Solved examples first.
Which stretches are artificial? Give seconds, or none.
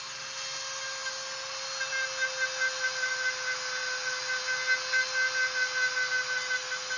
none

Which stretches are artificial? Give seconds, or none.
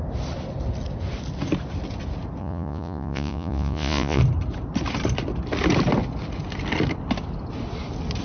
2.4-4.2 (vocoder, Vocos)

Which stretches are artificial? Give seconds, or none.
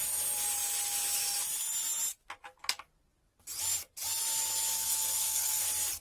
4.7-5.6 (codec, SNAC)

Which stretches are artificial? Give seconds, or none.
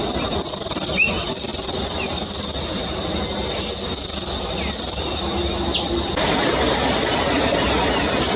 none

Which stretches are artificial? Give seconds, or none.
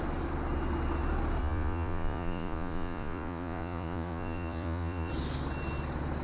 1.4-5.1 (vocoder, Vocos)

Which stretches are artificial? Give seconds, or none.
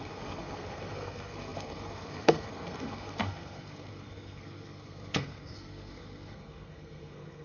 0.0-7.4 (codec, SNAC)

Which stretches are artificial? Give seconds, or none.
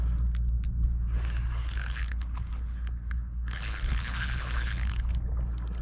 1.6-5.1 (codec, HILCodec)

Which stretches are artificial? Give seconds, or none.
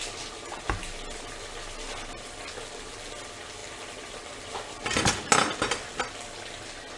none